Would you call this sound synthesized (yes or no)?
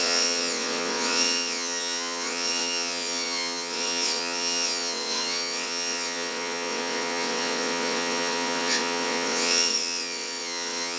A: yes